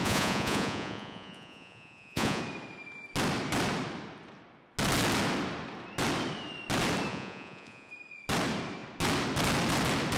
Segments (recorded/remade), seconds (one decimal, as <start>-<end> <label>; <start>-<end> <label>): 0.0-2.4 remade; 2.4-7.1 recorded; 7.1-7.9 remade; 7.9-10.2 recorded